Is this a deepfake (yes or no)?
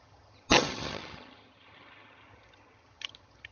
yes